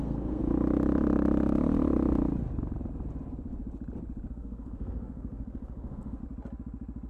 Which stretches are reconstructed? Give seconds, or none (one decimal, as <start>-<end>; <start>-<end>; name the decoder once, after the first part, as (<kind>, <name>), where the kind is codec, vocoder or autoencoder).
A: 0.0-0.4 (codec, SNAC); 4.3-6.2